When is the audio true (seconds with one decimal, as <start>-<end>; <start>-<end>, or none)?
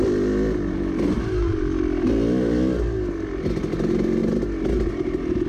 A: 0.0-5.5